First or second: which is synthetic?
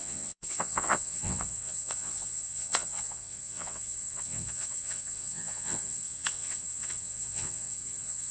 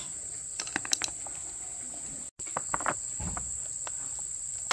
first